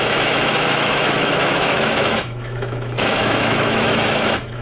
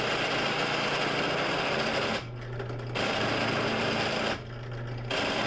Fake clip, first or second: first